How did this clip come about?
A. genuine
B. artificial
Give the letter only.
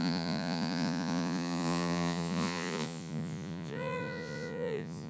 B